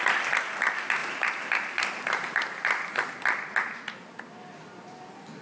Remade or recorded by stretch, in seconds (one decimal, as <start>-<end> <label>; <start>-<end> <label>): 0.0-5.4 recorded